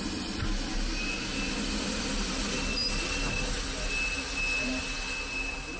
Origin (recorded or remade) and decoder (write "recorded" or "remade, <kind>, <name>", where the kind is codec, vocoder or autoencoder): recorded